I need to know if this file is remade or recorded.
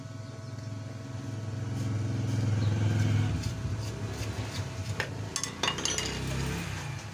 recorded